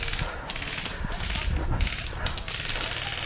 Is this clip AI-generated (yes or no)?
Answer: no